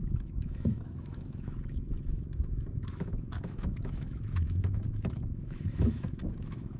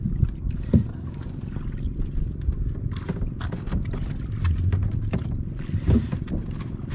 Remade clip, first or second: first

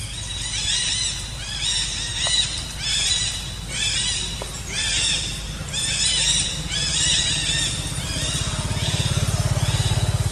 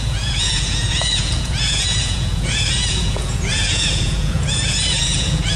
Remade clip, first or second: second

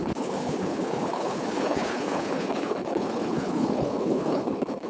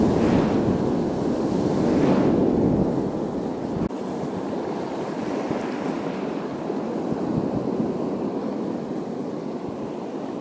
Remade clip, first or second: first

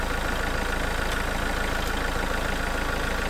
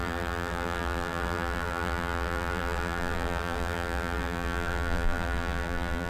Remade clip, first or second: second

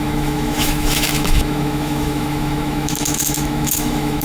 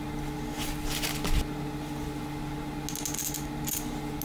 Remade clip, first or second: first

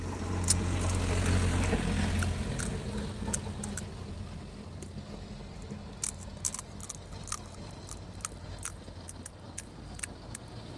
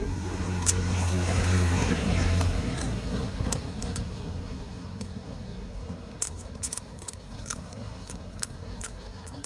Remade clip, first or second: second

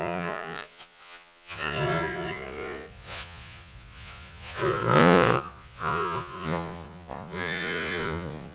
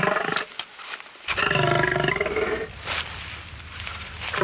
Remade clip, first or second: first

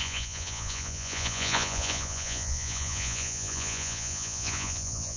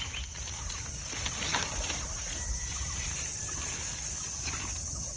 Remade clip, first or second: first